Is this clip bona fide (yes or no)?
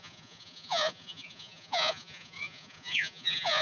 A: no